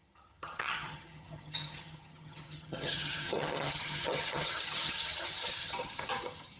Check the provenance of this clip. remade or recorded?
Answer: remade